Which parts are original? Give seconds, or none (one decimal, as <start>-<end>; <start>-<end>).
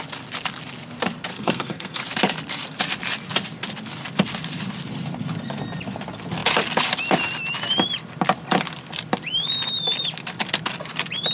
0.0-1.3; 2.0-11.3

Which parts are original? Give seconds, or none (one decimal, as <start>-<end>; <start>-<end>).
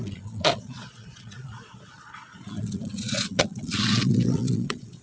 none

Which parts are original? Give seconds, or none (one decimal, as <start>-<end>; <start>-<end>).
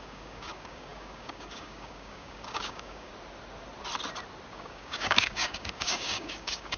3.1-4.5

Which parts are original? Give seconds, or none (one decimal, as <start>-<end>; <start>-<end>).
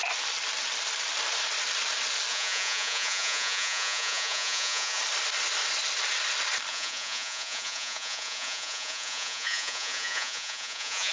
0.0-2.3; 5.0-6.7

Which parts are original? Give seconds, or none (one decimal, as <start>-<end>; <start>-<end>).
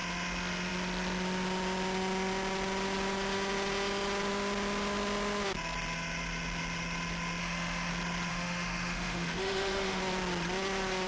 0.0-7.4; 7.9-8.3; 10.0-11.1